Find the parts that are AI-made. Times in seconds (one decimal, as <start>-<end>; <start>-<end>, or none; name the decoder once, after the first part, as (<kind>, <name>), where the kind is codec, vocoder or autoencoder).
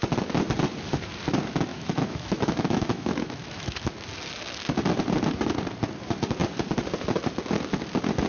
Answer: 1.7-3.8 (autoencoder, DAC-VAE)